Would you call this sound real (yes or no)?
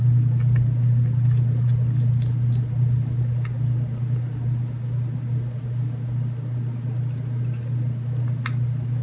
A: yes